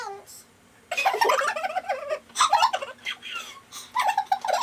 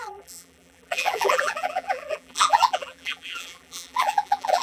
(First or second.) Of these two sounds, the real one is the first